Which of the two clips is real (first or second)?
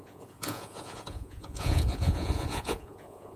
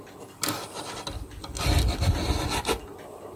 second